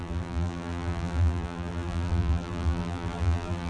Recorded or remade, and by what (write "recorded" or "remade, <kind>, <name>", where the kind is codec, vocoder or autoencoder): remade, vocoder, BigVGAN v2